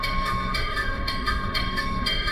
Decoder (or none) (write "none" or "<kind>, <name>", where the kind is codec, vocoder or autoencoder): autoencoder, DAC-VAE